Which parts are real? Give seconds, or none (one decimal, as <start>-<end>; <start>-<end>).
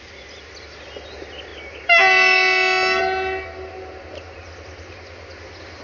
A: 0.0-5.8